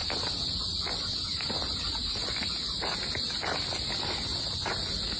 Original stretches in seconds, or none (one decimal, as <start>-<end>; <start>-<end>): 0.0-5.2